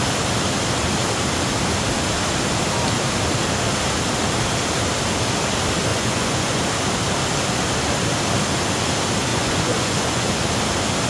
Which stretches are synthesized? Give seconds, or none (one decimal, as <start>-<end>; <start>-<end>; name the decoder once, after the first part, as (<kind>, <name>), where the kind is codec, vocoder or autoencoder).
5.9-6.6 (vocoder, Vocos); 9.3-10.4